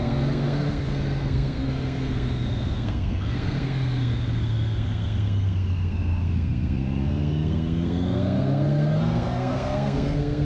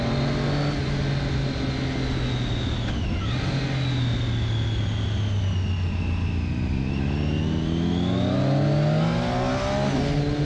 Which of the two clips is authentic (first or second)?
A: second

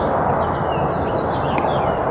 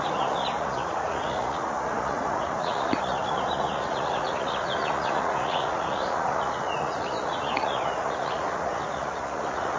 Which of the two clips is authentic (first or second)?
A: first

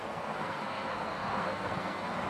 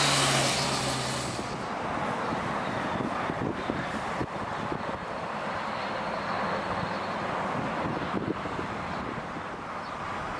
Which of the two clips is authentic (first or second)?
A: second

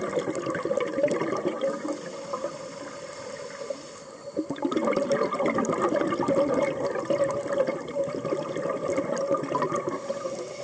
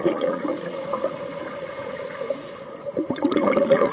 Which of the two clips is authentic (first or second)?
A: first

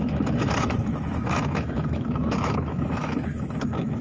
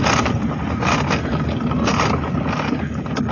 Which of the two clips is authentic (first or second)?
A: second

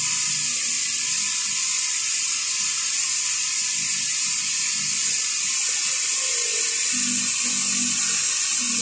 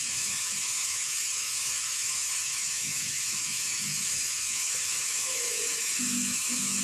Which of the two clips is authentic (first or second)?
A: first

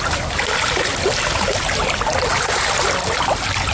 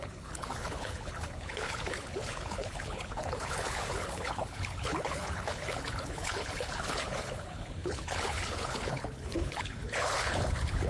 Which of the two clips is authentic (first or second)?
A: first